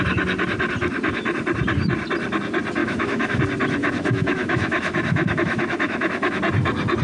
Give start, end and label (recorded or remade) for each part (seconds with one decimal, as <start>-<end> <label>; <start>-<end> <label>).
0.0-2.8 recorded; 2.8-3.4 remade; 3.4-3.8 recorded; 3.8-6.4 remade; 6.4-7.0 recorded